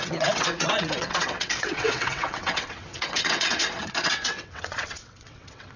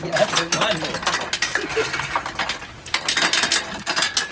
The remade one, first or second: first